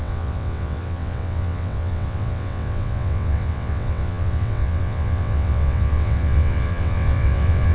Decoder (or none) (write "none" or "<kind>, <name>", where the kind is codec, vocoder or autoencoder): vocoder, WaveNeXt